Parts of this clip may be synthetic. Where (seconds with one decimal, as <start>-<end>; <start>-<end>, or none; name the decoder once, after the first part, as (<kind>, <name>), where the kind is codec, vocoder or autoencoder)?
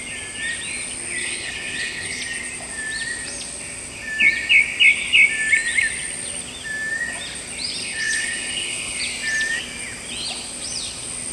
1.2-2.2 (codec, HILCodec); 7.8-9.0